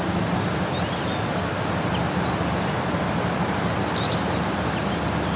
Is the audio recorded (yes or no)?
yes